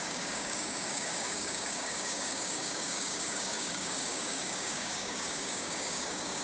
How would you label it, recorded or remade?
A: remade